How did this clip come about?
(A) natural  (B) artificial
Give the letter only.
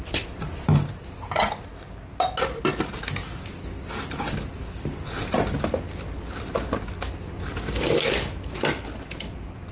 A